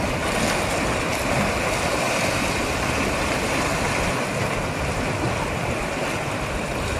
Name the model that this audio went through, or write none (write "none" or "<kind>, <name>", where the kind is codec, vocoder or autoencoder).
none